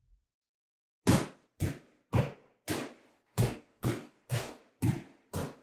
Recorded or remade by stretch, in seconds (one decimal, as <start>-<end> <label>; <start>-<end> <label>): 0.0-3.1 recorded; 3.1-4.6 remade; 4.6-5.6 recorded